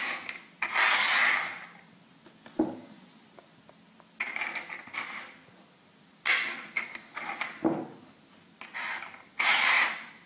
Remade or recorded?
recorded